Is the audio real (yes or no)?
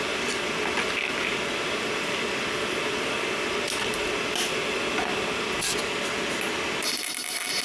yes